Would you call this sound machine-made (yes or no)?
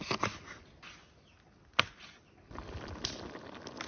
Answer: no